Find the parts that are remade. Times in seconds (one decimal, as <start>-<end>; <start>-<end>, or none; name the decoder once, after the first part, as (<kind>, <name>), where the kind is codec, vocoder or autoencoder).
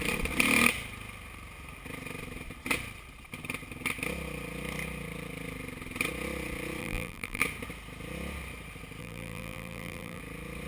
6.8-7.4 (vocoder, BigVGAN v2); 9.0-10.2